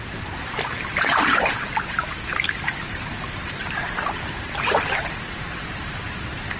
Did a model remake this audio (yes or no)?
yes